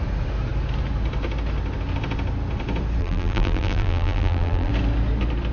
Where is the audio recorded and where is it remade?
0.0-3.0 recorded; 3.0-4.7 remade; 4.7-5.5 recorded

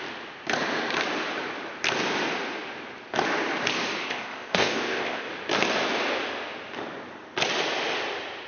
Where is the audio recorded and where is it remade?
0.0-4.0 recorded; 4.0-5.3 remade; 5.3-8.5 recorded